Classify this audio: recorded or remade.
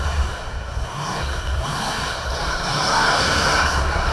remade